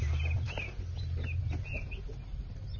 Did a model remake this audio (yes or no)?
no